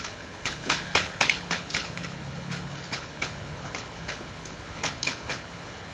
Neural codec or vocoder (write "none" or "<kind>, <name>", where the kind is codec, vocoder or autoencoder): codec, HILCodec